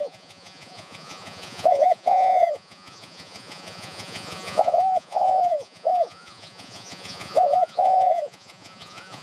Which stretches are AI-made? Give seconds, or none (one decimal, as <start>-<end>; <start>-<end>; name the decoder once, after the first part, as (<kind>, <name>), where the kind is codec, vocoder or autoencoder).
0.0-9.2 (vocoder, Vocos)